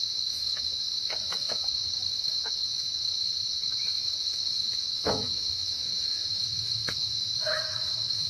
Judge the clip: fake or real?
fake